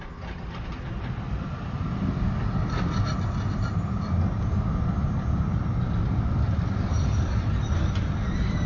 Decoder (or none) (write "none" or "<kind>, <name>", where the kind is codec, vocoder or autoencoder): none